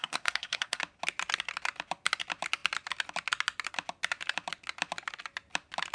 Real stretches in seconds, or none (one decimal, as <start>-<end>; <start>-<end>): 0.8-5.9